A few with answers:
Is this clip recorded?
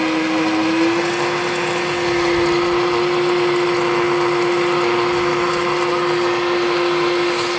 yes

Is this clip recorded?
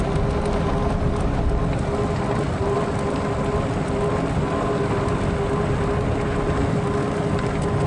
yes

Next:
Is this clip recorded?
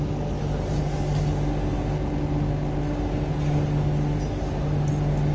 yes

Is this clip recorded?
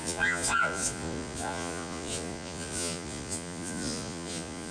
no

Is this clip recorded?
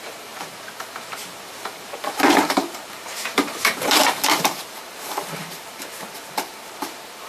no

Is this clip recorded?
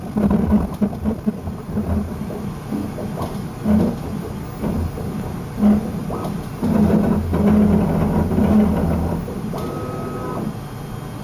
yes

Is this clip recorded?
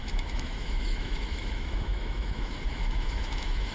no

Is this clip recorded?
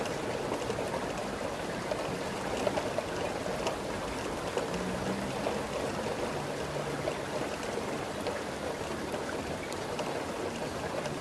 yes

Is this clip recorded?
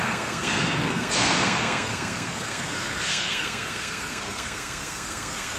no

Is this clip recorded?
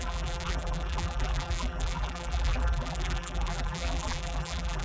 no